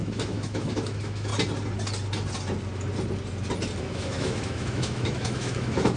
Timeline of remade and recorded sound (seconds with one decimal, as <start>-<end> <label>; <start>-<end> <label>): 0.0-1.3 remade; 1.3-3.8 recorded; 3.8-6.0 remade